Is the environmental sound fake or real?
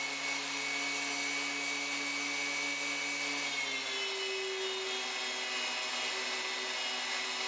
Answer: real